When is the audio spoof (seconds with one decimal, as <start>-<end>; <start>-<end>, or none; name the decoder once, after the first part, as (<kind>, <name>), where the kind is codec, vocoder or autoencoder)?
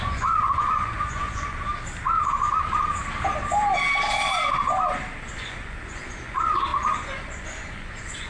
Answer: 0.0-1.7 (vocoder, Vocos); 5.3-8.3